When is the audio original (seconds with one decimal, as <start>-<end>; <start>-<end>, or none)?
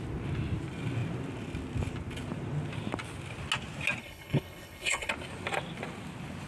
0.0-4.0; 5.1-6.5